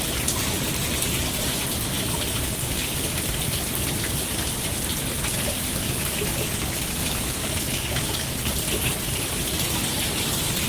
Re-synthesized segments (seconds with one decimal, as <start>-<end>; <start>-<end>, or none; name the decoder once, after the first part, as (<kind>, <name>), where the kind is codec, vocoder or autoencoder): 2.6-3.7 (codec, DAC); 5.6-8.5